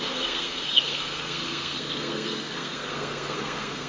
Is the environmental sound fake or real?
fake